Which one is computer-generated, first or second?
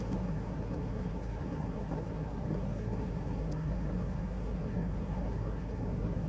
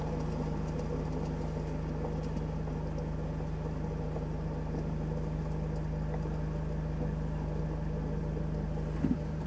first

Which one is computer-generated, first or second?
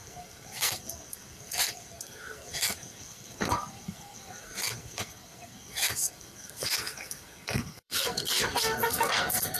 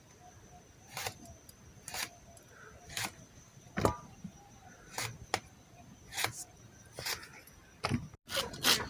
first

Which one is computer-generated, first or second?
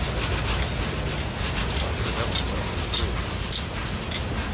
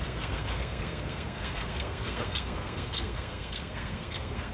second